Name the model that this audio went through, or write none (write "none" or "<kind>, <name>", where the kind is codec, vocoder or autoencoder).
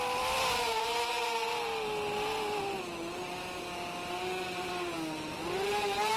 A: none